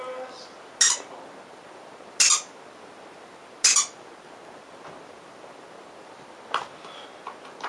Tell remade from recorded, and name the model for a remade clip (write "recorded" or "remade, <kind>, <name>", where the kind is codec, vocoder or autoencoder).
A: recorded